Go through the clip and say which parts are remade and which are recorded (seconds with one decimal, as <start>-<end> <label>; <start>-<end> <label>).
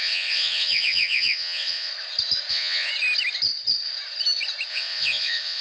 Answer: 0.0-1.9 remade; 1.9-2.5 recorded; 2.5-2.9 remade; 2.9-4.7 recorded; 4.7-5.6 remade